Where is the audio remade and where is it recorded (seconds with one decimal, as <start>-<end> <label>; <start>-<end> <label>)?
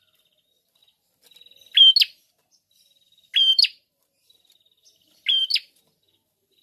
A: 0.0-3.5 recorded; 3.5-5.1 remade; 5.1-6.6 recorded